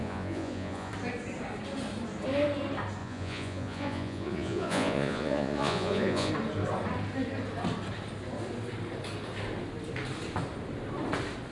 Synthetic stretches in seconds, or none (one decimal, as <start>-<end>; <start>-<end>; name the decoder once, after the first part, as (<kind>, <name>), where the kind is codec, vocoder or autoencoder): 0.0-0.9 (vocoder, Vocos); 3.0-6.3